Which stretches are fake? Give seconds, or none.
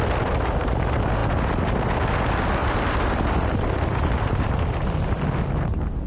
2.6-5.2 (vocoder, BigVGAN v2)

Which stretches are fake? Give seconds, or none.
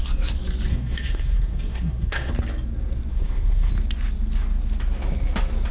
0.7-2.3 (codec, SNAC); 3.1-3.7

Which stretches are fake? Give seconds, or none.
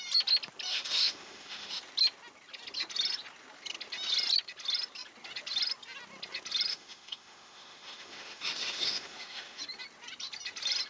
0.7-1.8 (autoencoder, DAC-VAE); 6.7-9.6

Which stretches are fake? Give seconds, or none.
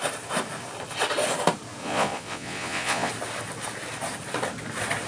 1.8-3.1 (vocoder, Vocos)